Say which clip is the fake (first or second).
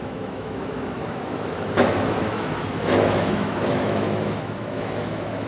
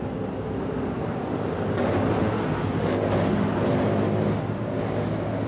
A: first